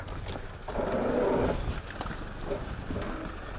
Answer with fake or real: real